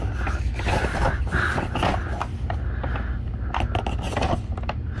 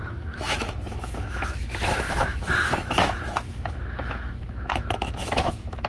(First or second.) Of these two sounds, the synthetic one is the second